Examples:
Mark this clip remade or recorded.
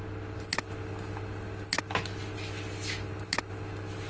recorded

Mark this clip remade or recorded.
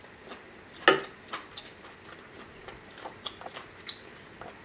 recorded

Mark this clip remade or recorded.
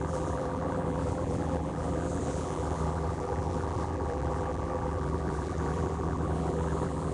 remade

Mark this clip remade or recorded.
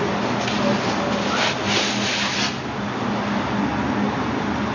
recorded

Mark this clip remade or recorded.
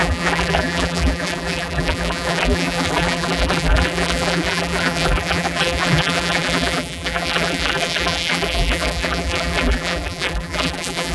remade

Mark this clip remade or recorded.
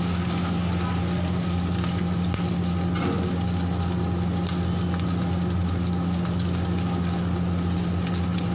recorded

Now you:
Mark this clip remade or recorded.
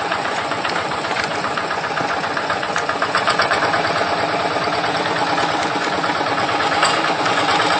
remade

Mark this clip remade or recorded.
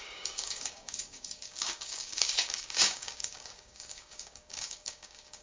remade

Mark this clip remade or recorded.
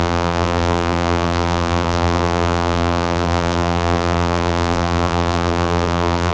remade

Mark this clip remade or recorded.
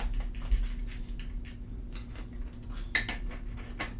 recorded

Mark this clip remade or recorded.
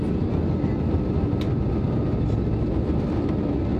recorded